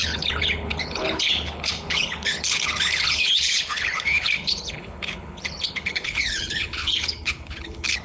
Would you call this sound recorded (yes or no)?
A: no